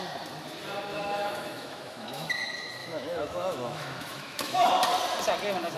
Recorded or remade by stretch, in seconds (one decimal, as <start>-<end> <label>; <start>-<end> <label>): 0.0-0.9 recorded; 0.9-2.3 remade; 2.3-2.8 recorded; 2.8-4.7 remade; 4.7-5.8 recorded